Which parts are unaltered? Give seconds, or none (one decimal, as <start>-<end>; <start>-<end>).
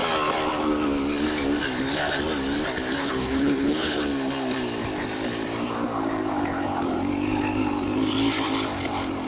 0.0-3.0; 4.0-9.3